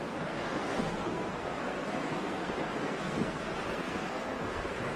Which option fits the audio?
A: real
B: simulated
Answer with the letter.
B